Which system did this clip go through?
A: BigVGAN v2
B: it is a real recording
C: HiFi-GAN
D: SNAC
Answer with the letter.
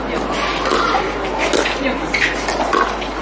B